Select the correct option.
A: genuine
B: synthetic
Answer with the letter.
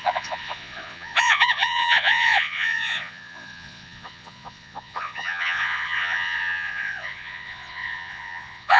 B